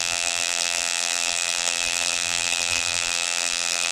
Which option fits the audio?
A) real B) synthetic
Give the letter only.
B